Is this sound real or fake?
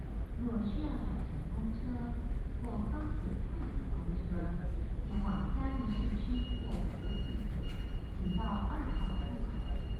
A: real